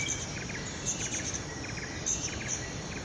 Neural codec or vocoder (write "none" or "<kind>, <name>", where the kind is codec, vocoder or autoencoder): none